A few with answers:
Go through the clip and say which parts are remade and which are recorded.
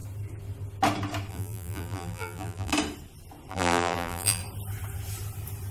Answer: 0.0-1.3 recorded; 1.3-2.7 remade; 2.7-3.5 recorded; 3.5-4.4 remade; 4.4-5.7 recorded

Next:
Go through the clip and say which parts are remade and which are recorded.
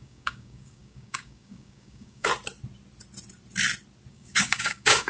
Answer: 0.0-2.3 remade; 2.3-4.1 recorded; 4.1-5.1 remade